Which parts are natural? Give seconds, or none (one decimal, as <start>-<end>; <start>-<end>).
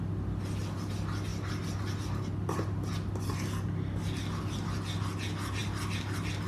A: 0.0-6.5